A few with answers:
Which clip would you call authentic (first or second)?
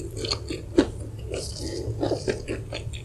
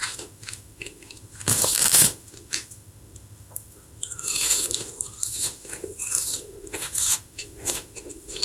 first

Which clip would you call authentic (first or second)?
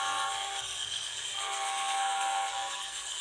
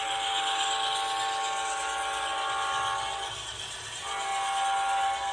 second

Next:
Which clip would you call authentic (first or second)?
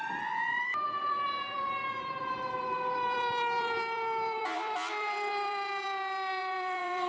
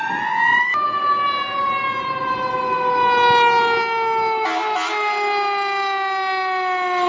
second